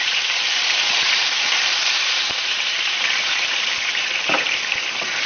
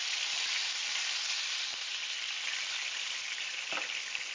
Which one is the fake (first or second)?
first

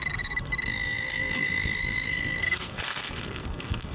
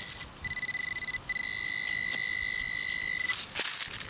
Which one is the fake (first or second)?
first